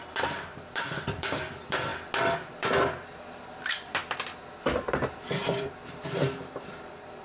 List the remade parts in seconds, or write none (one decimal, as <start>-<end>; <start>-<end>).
0.0-1.9; 2.6-7.2